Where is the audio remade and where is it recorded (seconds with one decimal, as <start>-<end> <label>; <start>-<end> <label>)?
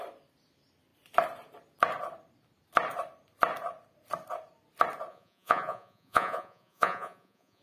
0.0-5.1 recorded; 5.1-7.6 remade